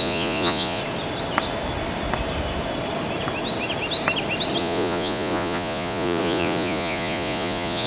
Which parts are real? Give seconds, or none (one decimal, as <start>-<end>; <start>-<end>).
0.8-4.6